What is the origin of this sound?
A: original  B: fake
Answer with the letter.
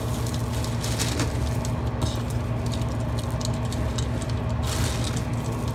A